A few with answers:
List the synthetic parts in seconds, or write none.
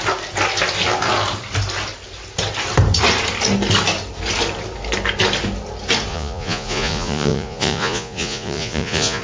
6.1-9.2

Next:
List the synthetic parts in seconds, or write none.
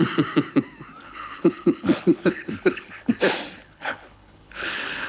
1.0-3.1; 3.6-5.1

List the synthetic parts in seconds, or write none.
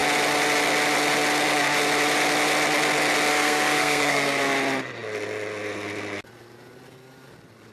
3.3-4.4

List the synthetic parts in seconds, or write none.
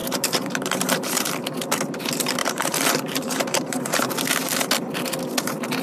0.0-1.3; 2.4-4.1